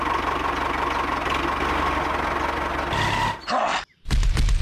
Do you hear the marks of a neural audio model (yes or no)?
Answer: no